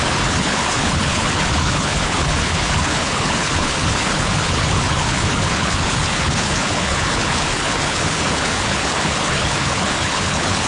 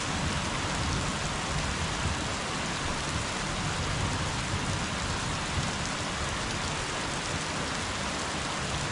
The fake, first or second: first